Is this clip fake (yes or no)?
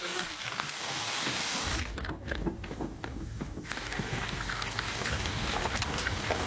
yes